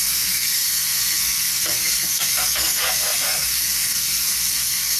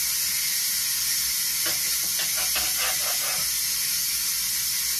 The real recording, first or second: second